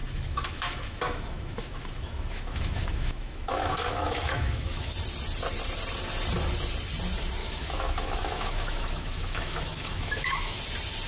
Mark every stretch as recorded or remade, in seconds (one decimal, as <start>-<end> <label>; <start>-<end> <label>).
0.0-4.9 remade; 4.9-7.4 recorded; 7.4-10.6 remade; 10.6-11.1 recorded